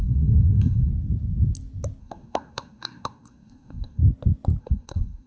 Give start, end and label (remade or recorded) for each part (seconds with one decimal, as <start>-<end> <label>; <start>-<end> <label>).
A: 0.0-0.9 remade; 0.9-2.0 recorded; 2.0-4.0 remade; 4.0-4.6 recorded; 4.6-5.3 remade